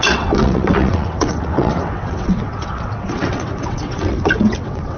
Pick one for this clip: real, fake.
fake